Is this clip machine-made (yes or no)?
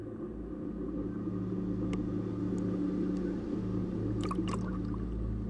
no